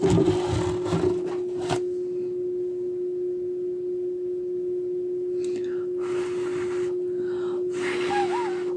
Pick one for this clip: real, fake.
real